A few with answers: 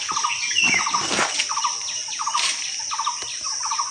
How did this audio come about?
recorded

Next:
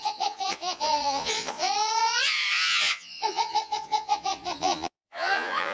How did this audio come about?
remade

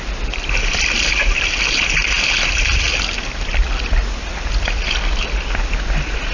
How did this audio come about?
recorded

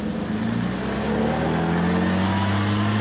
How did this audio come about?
recorded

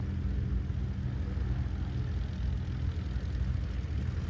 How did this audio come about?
recorded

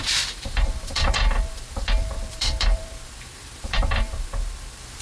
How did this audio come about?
remade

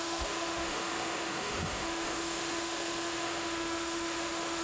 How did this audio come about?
remade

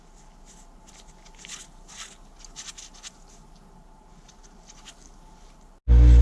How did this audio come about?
recorded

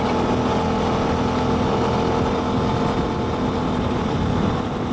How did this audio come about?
recorded